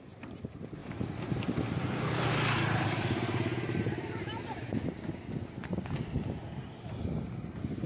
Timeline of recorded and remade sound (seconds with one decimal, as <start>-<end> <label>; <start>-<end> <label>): 0.0-7.9 recorded